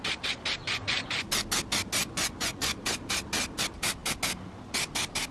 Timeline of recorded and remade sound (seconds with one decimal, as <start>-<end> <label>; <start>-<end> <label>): 0.0-0.6 recorded; 0.6-1.3 remade; 1.3-2.0 recorded; 2.0-2.8 remade; 2.8-5.3 recorded